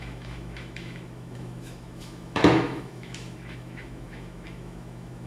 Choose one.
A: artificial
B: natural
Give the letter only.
A